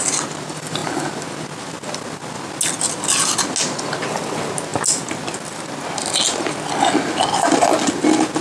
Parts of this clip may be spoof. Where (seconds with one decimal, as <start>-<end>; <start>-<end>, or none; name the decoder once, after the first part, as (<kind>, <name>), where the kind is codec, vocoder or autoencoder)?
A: none